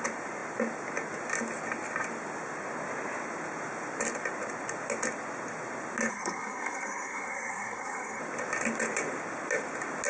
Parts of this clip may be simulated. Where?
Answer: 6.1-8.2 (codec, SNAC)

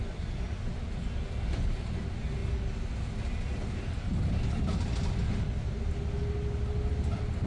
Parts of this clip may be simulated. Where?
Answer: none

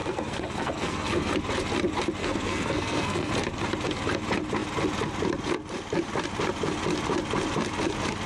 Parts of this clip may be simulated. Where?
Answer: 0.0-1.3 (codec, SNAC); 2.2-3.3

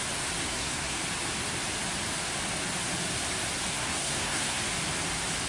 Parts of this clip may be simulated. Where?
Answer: 0.4-1.0 (codec, SNAC); 3.7-4.6

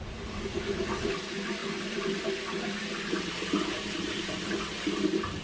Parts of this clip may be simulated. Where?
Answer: none